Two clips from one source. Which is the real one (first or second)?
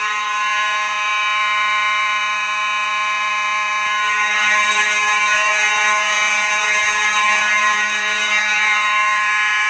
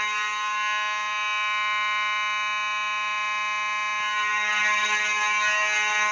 second